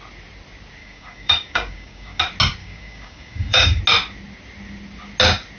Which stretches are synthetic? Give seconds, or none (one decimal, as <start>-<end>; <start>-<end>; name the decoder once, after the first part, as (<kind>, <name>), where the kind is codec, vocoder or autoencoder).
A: 0.8-2.2 (codec, DAC); 2.6-3.8